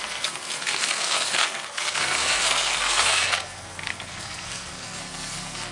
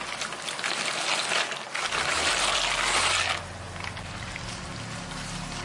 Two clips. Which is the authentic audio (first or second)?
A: second